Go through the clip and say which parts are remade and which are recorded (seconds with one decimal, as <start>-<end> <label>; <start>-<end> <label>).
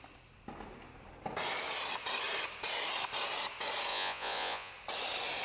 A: 0.0-3.9 recorded; 3.9-4.7 remade; 4.7-5.4 recorded